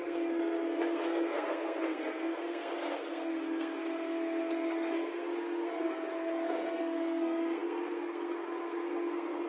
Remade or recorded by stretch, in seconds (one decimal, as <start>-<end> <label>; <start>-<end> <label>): 0.0-9.5 remade